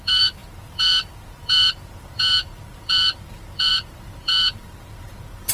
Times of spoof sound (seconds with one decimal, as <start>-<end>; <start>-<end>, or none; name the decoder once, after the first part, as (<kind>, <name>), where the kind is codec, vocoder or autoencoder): 0.0-5.5 (vocoder, BigVGAN v2)